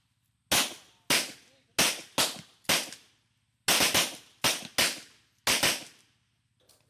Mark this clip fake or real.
real